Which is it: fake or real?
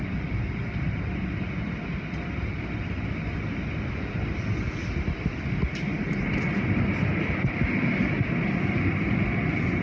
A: real